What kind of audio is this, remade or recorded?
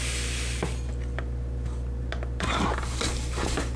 recorded